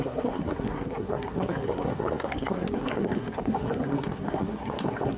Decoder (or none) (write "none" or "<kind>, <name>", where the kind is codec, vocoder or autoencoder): codec, SNAC